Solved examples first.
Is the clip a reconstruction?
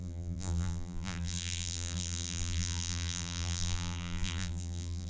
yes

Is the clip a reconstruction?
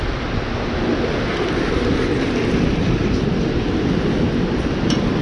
no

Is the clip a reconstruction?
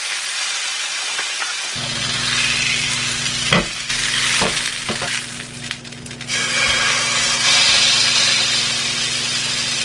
no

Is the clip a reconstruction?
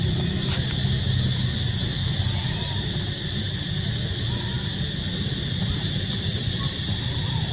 no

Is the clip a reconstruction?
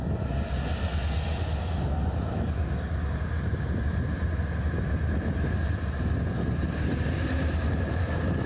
no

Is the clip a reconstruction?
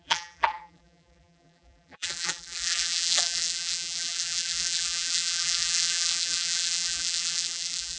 yes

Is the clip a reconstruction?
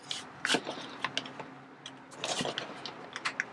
no